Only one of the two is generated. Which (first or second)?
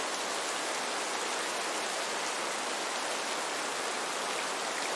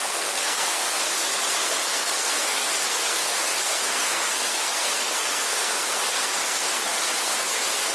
second